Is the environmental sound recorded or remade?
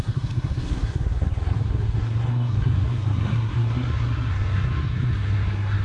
remade